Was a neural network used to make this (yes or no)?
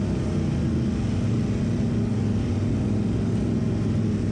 no